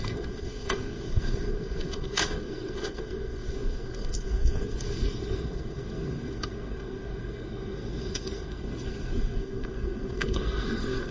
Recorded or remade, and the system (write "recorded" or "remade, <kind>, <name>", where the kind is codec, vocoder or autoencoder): remade, codec, SNAC